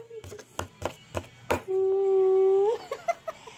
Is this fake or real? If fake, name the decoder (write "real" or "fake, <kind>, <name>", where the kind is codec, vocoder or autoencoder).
real